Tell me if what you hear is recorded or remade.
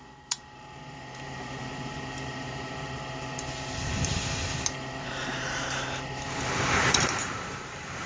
remade